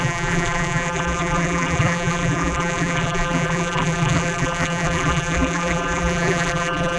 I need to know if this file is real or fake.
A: fake